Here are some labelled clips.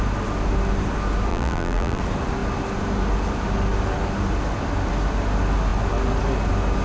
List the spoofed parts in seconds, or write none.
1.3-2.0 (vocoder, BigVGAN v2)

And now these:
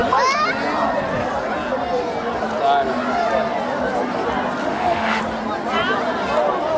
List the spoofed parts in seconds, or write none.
4.6-5.2 (autoencoder, DAC-VAE)

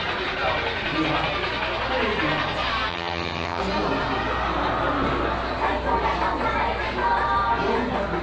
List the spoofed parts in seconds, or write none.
2.9-3.6 (vocoder, HiFi-GAN)

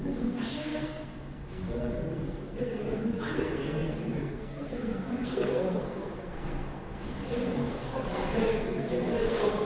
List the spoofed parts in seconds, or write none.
0.0-9.6 (codec, SNAC)

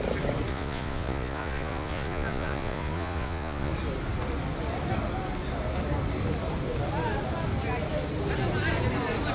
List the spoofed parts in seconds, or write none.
0.5-3.7 (vocoder, Vocos)

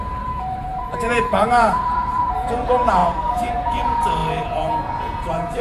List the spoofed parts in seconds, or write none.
0.0-5.6 (vocoder, Vocos)

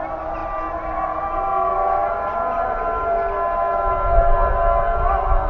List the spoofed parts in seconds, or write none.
none

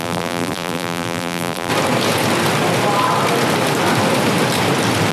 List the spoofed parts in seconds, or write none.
0.0-1.7 (vocoder, BigVGAN v2)